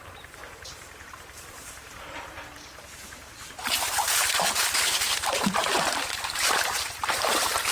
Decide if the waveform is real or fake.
fake